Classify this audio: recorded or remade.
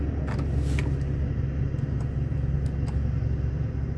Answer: recorded